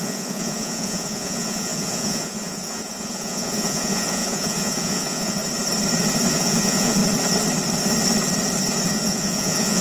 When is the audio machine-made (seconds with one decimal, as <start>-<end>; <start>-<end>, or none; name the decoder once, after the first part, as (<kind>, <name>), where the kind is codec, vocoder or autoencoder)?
0.0-5.4 (vocoder, Vocos); 6.3-7.0; 8.9-9.8